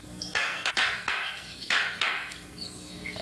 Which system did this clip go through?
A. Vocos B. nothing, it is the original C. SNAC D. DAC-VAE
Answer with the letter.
C